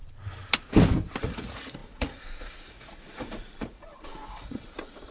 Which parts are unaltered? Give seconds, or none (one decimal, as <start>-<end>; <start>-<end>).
0.0-1.2